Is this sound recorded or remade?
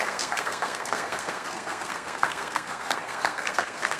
remade